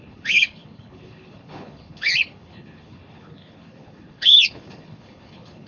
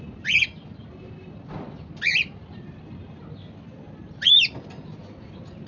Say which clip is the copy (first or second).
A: first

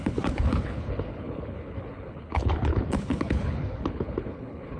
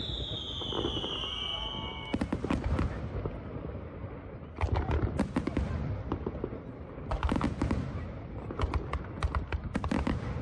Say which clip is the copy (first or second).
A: first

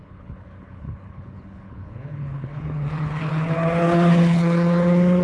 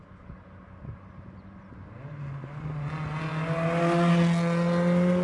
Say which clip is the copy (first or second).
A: first